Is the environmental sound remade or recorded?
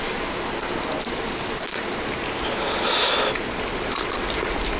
recorded